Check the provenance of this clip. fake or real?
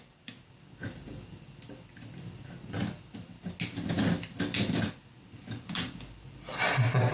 real